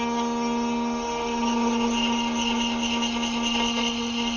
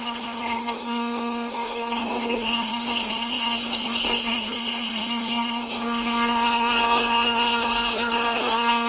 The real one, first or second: first